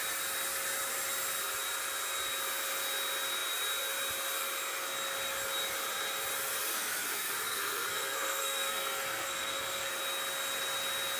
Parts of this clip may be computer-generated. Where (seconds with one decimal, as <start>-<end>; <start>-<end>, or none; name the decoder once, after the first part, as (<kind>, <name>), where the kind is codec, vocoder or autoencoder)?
6.6-9.9 (codec, SNAC)